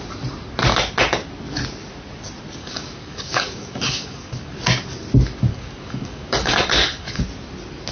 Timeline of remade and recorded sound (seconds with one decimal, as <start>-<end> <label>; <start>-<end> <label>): 0.0-2.6 recorded; 2.6-4.5 remade; 4.5-5.5 recorded; 5.5-7.2 remade; 7.2-7.9 recorded

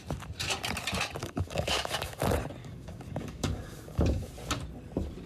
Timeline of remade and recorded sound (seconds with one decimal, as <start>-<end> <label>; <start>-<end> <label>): 0.0-1.2 recorded; 1.2-2.2 remade; 2.2-2.6 recorded; 2.6-4.3 remade; 4.3-5.3 recorded

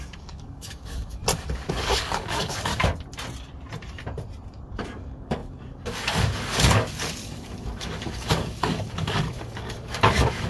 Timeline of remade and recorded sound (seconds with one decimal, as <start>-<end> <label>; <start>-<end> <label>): 0.0-1.2 remade; 1.2-1.7 recorded; 1.7-2.7 remade; 2.7-4.8 recorded; 4.8-10.5 remade